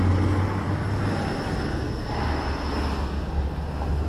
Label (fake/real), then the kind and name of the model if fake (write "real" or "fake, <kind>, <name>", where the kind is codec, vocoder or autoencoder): real